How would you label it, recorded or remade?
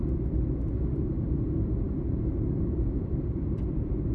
remade